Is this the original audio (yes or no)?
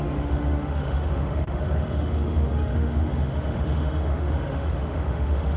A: no